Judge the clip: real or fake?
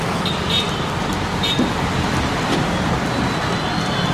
fake